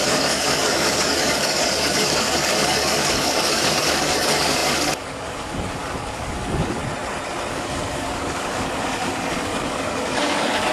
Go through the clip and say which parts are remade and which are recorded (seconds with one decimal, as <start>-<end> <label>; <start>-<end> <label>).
0.0-6.8 remade; 6.8-7.5 recorded; 7.5-10.7 remade